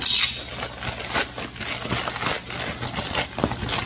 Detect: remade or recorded recorded